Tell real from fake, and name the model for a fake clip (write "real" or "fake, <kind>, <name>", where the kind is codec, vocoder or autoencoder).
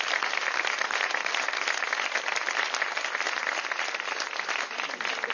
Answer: real